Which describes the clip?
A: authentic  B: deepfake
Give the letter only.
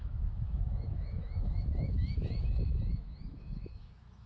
B